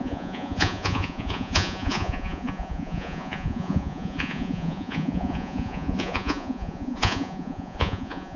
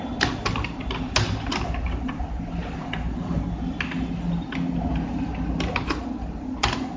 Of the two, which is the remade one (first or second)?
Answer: first